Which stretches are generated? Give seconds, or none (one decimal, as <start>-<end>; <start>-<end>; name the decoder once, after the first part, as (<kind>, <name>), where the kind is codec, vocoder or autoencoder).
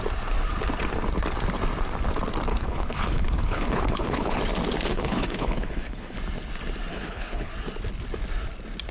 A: 2.5-4.4 (codec, HILCodec); 4.9-6.2; 6.9-7.5